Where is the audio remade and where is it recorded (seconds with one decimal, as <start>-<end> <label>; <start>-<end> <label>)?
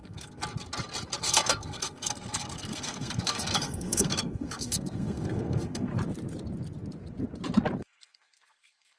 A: 0.0-0.4 remade; 0.4-1.2 recorded; 1.2-5.9 remade; 5.9-7.8 recorded; 7.8-9.0 remade